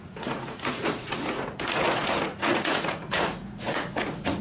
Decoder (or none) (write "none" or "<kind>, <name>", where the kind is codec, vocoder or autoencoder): vocoder, Vocos